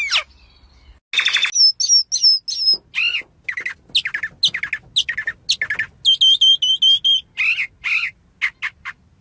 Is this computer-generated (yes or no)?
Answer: no